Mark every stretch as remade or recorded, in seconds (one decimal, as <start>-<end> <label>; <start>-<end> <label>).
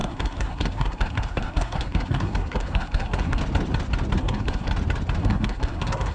0.0-3.4 remade; 3.4-4.2 recorded; 4.2-4.7 remade; 4.7-5.2 recorded; 5.2-6.1 remade